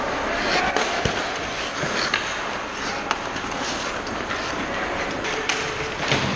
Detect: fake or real real